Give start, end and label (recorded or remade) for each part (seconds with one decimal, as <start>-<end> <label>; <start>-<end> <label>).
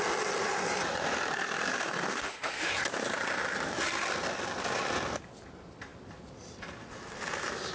0.0-1.7 recorded; 1.7-2.7 remade; 2.7-7.7 recorded